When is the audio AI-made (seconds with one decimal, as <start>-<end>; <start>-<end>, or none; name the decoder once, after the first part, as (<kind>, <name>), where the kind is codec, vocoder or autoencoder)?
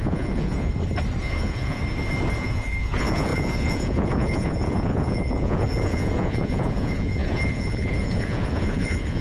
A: 0.0-0.7 (vocoder, Vocos); 1.2-1.8; 2.4-9.2